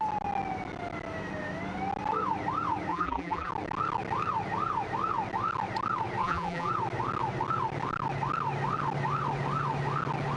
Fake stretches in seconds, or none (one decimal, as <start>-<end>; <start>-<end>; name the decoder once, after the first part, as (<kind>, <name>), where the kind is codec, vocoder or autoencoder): 2.9-3.5 (vocoder, BigVGAN v2); 6.2-6.7